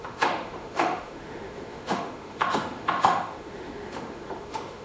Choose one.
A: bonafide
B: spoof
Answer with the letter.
B